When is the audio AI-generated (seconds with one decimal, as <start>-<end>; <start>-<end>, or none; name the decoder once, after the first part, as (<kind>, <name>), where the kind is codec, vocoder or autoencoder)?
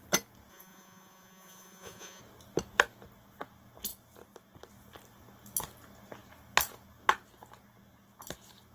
0.5-2.2 (vocoder, Vocos)